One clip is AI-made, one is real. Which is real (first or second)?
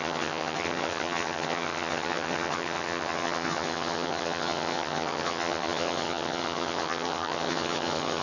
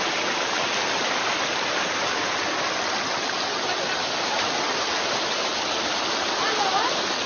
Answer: second